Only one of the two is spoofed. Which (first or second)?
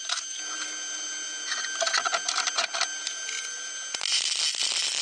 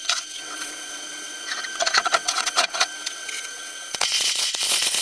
second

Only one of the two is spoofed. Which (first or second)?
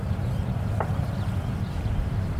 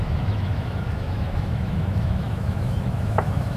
second